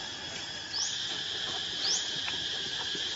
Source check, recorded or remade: recorded